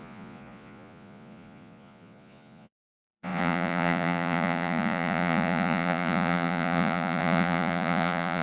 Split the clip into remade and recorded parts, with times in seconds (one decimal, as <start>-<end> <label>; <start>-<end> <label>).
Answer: 0.0-8.4 remade